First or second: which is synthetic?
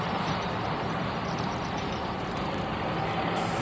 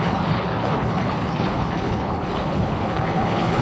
second